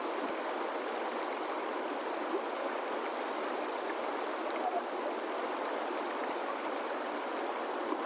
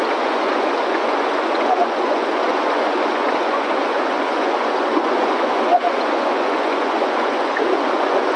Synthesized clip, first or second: second